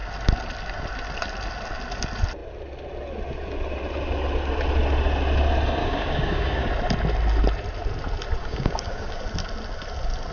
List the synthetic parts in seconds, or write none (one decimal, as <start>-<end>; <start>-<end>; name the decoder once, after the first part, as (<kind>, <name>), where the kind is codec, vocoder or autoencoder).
5.8-6.7 (codec, DAC); 8.4-9.2